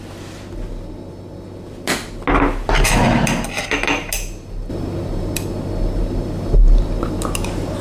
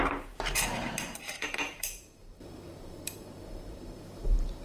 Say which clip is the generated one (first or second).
second